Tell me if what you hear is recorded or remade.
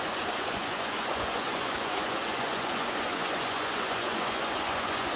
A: remade